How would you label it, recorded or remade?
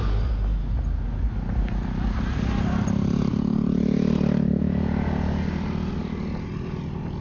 recorded